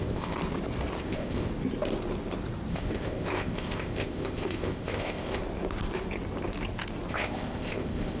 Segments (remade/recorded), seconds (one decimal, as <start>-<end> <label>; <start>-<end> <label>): 0.0-0.4 remade; 0.4-1.0 recorded; 1.0-1.5 remade; 1.5-2.7 recorded; 2.7-5.4 remade; 5.4-7.1 recorded; 7.1-8.2 remade